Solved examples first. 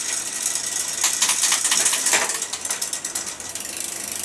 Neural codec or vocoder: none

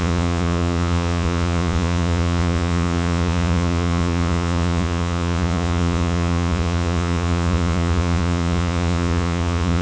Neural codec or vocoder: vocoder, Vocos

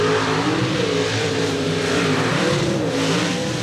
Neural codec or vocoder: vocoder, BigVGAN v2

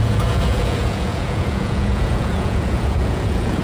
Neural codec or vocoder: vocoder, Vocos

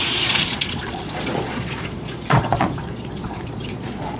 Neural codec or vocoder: vocoder, Vocos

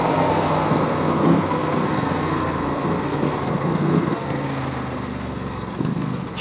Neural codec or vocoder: codec, SNAC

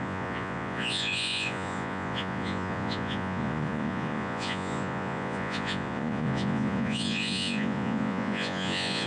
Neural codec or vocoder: vocoder, Vocos